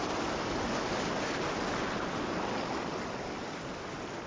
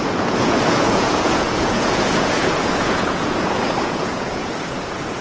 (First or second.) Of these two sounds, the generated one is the second